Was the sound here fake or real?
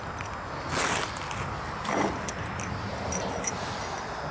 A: real